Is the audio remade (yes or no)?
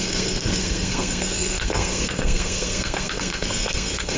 yes